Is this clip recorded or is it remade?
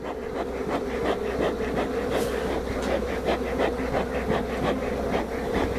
recorded